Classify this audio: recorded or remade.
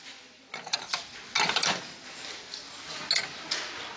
recorded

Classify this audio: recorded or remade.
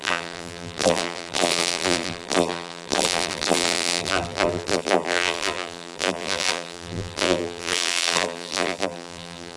remade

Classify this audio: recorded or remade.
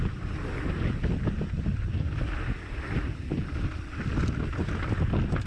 recorded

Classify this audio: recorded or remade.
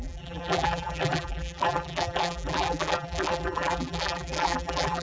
remade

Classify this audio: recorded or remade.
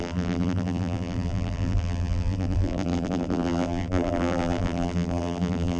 remade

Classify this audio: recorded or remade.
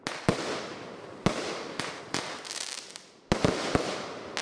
recorded